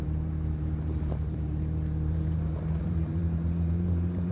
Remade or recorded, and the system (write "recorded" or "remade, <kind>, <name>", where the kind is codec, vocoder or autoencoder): remade, vocoder, BigVGAN v2